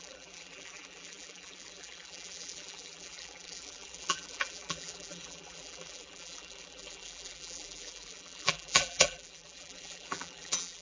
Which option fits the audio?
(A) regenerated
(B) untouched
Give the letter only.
A